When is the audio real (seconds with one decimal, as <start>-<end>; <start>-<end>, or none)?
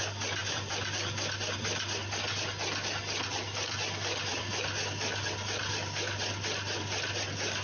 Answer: 0.0-0.4; 1.3-4.3; 5.3-7.6